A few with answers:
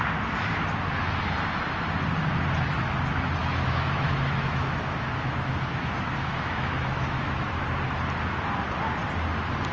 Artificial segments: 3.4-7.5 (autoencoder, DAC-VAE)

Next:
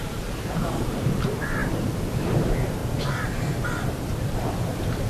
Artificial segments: 2.8-4.4 (vocoder, BigVGAN v2)

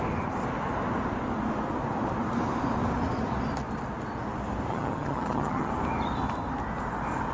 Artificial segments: 4.7-5.7 (vocoder, HiFi-GAN)

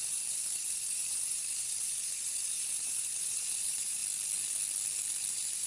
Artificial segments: 0.0-4.0 (vocoder, BigVGAN v2); 5.3-5.7

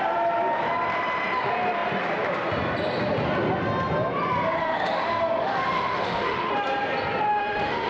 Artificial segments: 4.6-6.5 (autoencoder, DAC-VAE); 7.3-7.9

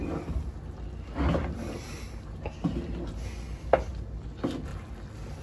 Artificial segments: none

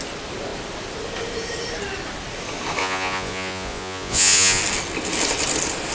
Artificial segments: 2.8-4.6 (vocoder, Vocos)